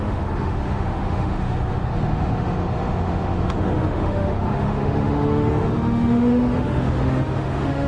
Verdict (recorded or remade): remade